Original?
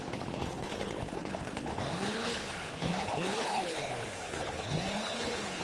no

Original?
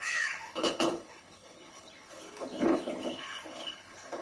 no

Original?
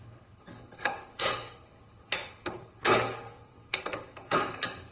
no